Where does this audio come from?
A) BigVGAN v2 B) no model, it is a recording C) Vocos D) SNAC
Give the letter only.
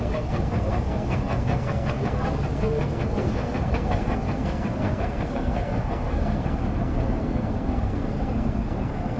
D